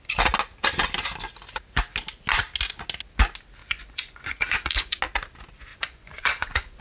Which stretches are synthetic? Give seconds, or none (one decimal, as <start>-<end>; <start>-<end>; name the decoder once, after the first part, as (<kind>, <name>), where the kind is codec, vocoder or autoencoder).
3.6-5.0 (vocoder, Vocos); 5.7-6.8